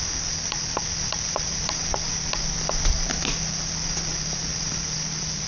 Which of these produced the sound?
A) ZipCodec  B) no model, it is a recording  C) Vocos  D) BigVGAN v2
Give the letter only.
B